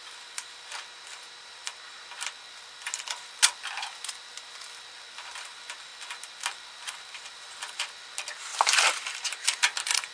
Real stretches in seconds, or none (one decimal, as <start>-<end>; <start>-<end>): 0.0-10.1